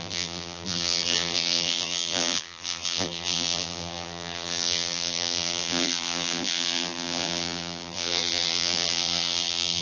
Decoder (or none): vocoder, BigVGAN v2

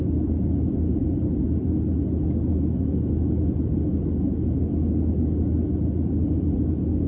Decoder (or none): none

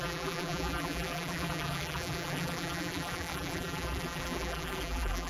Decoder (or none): vocoder, BigVGAN v2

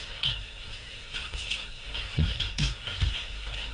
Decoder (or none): codec, SNAC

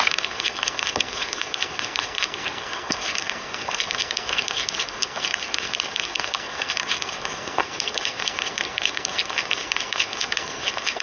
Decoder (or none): codec, SNAC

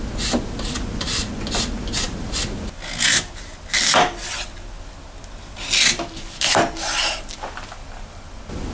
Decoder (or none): none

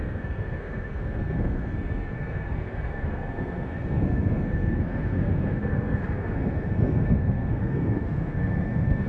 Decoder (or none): codec, SNAC